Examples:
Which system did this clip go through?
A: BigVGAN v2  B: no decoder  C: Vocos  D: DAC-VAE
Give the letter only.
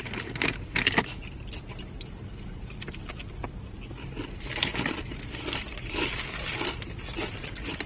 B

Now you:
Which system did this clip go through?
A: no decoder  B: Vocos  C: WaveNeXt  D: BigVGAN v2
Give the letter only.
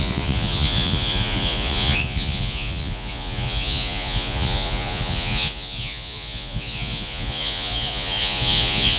B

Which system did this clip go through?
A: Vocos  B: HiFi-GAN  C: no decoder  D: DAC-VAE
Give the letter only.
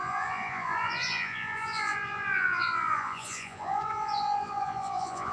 A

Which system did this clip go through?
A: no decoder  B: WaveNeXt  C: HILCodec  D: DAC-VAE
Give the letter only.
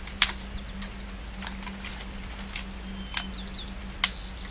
A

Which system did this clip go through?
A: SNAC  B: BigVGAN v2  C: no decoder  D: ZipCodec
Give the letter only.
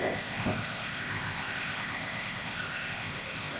D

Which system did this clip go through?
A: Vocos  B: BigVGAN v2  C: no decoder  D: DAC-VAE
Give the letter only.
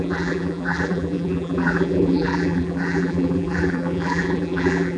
B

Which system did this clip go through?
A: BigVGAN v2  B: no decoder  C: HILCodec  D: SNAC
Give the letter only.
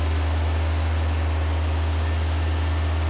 B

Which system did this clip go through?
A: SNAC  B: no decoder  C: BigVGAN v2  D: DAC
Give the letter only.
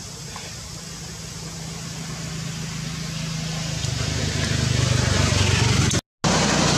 B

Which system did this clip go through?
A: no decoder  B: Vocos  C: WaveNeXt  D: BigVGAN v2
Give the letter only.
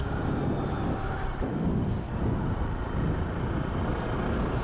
A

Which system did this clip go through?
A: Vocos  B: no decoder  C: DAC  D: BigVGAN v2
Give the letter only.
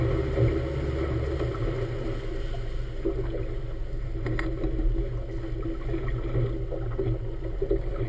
B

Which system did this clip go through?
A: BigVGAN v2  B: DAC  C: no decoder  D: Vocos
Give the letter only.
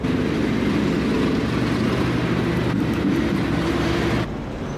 C